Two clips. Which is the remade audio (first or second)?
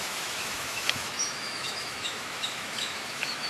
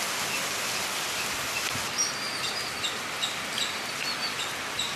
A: first